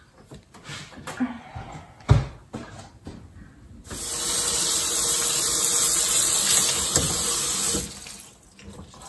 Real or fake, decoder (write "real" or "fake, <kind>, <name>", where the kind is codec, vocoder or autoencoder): real